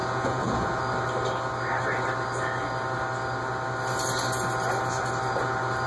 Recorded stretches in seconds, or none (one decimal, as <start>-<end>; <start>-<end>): 0.8-5.9